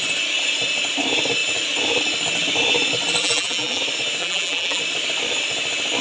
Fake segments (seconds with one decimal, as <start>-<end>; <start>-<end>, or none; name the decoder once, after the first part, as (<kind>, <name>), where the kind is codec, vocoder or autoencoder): 3.2-3.8 (vocoder, BigVGAN v2); 4.2-4.8

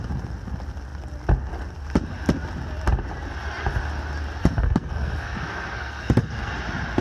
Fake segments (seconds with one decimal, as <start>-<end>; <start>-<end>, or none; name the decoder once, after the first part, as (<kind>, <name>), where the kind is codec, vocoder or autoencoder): 4.4-6.5 (codec, SNAC)

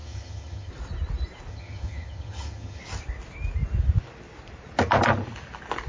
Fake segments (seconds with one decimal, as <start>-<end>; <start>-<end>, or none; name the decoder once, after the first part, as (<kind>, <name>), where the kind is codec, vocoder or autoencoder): 0.0-0.7 (vocoder, HiFi-GAN); 1.5-2.8

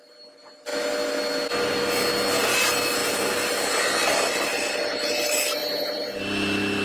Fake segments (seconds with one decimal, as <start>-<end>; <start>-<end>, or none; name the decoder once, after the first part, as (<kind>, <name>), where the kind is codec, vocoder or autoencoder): none

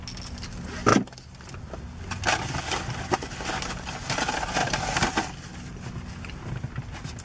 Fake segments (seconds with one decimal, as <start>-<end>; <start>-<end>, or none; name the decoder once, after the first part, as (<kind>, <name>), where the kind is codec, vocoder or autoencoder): 4.6-7.2 (vocoder, BigVGAN v2)